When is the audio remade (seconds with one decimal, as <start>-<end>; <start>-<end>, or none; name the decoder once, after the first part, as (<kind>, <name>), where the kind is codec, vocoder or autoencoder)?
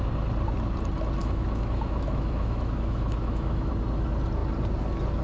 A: 1.2-3.7 (autoencoder, DAC-VAE)